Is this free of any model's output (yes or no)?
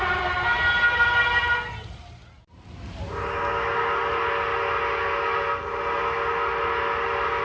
yes